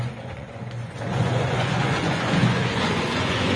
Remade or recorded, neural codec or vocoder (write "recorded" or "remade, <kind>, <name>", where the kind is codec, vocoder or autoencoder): remade, vocoder, Vocos